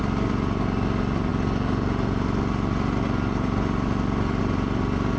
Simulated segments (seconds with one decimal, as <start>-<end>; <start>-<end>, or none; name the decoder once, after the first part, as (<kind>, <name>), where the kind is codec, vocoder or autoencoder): none